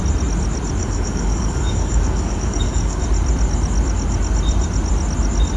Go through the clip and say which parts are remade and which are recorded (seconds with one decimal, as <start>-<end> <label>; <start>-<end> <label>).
0.0-0.8 recorded; 0.8-3.0 remade; 3.0-5.6 recorded